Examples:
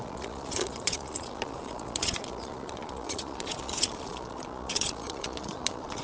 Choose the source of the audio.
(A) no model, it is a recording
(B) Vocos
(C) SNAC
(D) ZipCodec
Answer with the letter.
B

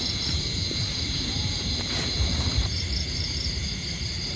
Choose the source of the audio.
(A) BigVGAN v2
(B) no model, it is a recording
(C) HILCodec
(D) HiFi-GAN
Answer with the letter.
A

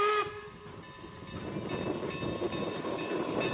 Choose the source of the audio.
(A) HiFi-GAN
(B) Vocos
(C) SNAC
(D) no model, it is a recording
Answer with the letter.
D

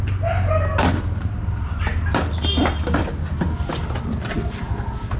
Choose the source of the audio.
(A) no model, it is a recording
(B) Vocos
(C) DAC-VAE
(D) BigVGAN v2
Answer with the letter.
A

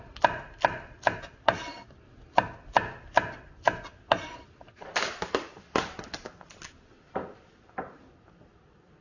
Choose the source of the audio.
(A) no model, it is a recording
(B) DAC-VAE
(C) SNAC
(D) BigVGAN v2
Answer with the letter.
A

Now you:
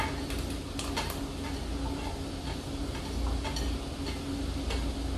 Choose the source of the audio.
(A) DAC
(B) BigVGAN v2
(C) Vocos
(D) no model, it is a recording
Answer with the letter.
D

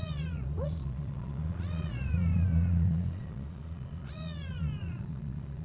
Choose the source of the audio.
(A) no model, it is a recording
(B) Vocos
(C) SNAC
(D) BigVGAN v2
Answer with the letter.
B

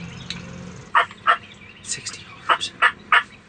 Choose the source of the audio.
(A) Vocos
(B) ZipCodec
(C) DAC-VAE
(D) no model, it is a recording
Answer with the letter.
D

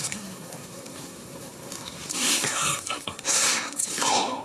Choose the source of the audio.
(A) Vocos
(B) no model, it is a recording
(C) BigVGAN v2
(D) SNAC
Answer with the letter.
D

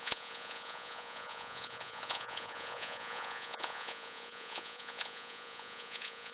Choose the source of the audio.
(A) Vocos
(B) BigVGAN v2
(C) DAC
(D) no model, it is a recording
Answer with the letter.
A